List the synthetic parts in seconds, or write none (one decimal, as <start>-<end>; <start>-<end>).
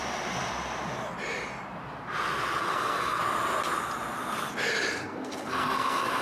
2.6-3.2; 5.0-6.2